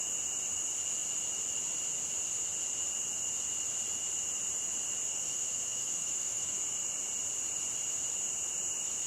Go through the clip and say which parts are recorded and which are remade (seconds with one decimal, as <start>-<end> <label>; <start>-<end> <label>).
0.0-5.1 recorded; 5.1-6.6 remade; 6.6-9.1 recorded